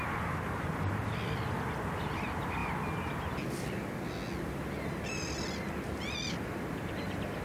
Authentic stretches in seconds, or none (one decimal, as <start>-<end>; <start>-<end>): 0.0-7.4